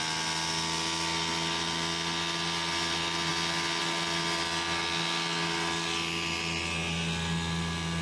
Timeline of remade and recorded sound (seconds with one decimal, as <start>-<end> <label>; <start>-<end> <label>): 0.0-8.0 recorded